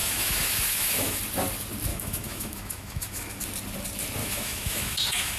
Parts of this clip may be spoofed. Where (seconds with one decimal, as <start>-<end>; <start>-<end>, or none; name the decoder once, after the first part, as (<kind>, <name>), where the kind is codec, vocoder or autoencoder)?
0.0-1.2 (autoencoder, DAC-VAE); 1.9-3.4; 4.2-5.4